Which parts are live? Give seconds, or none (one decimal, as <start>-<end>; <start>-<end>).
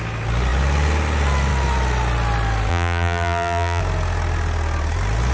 0.0-2.7; 3.8-5.3